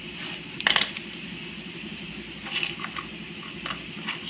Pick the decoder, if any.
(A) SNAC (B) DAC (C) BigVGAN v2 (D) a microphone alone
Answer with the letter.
D